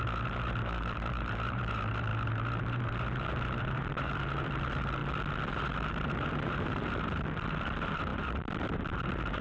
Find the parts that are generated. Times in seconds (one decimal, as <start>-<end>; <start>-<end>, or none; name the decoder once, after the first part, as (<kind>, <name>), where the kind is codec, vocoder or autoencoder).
0.0-5.0 (vocoder, BigVGAN v2); 5.5-9.4